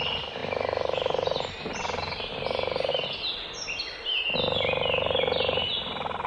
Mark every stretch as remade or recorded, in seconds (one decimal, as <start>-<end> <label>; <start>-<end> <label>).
0.0-6.3 recorded